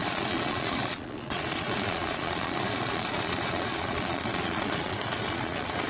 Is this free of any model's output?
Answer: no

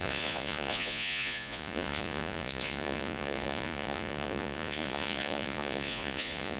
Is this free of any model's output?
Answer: no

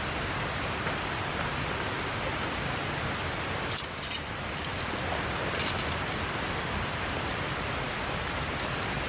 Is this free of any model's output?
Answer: yes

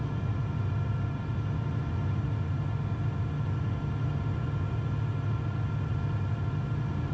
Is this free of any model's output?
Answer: yes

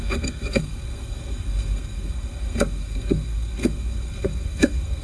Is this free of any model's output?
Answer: no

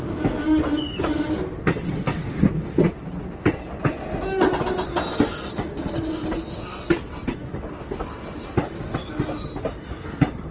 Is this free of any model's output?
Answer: yes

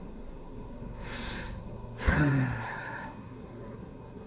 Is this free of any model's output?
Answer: no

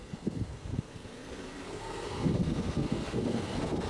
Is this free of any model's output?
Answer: no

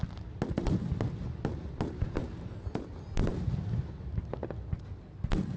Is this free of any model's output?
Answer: yes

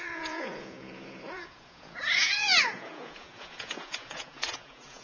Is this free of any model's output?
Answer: no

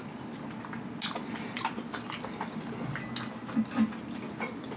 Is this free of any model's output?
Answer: yes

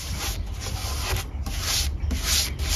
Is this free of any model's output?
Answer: yes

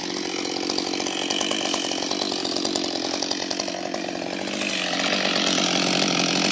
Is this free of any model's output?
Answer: no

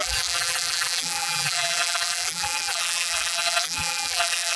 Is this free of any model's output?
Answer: no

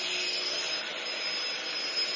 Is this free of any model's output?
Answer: yes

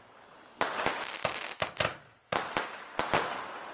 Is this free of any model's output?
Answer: yes